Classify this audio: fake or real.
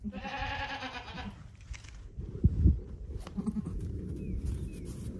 fake